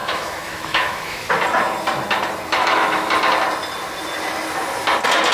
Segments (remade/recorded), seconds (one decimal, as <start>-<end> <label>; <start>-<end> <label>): 0.0-1.3 remade; 1.3-2.6 recorded; 2.6-3.1 remade; 3.1-5.3 recorded